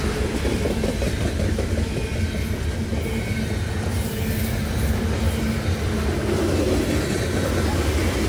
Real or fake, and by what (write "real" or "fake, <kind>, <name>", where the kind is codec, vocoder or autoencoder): real